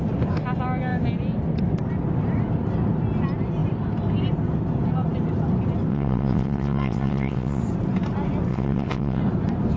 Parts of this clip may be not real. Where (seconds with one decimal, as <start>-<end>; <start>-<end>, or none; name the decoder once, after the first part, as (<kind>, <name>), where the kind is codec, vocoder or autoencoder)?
5.9-7.6 (vocoder, WaveNeXt); 8.5-9.2